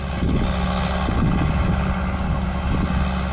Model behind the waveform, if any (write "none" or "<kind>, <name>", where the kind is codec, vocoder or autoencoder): none